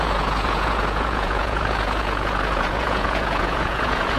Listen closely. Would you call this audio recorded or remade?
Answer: remade